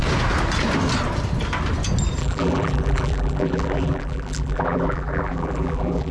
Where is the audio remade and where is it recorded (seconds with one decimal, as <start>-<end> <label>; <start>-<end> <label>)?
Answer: 0.0-2.2 recorded; 2.2-6.1 remade